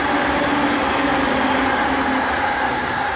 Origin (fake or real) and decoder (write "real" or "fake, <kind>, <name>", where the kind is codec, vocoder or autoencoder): real